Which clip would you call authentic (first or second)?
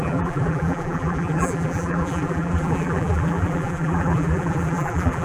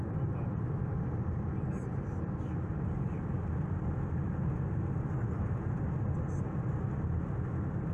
second